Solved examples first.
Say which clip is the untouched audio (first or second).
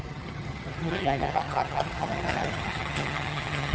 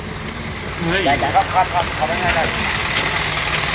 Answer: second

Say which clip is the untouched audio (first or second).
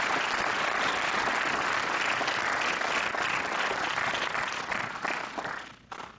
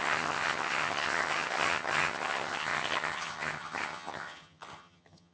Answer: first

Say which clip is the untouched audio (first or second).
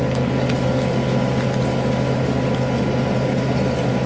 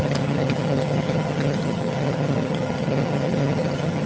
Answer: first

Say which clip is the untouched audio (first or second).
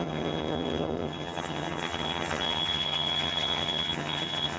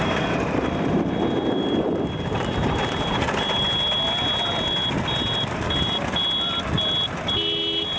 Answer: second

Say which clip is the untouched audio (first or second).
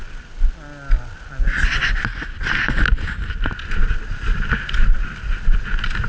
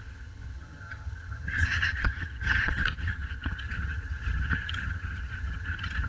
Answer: first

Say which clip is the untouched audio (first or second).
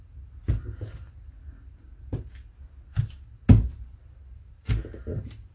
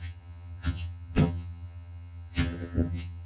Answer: first